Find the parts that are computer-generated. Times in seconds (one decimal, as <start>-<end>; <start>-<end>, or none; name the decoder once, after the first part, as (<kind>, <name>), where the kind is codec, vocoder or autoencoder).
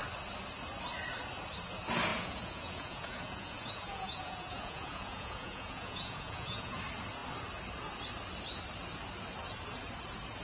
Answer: 2.1-6.8 (vocoder, Vocos)